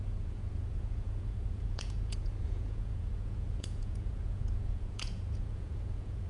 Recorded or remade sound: remade